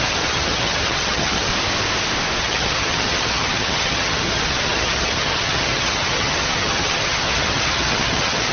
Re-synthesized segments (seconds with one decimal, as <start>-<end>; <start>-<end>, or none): 0.0-1.5; 2.4-8.5

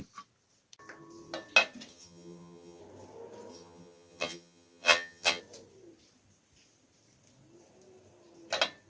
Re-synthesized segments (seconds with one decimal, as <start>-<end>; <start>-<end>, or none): 1.9-2.8; 3.5-5.4

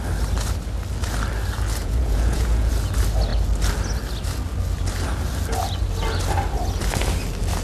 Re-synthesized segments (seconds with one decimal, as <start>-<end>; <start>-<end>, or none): 1.8-2.7

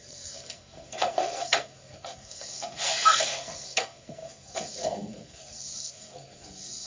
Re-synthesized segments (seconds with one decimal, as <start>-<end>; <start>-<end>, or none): 0.0-6.9

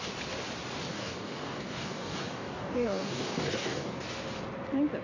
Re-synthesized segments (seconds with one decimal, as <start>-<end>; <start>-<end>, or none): 0.9-3.9

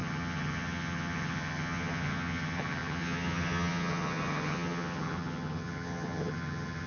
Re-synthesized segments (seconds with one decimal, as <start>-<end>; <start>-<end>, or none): 0.0-6.9

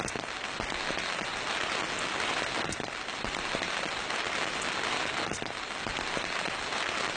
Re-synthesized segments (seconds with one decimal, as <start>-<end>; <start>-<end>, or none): none

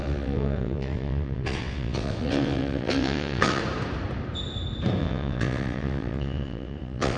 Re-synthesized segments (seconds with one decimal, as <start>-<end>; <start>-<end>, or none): 0.0-3.6; 5.0-7.2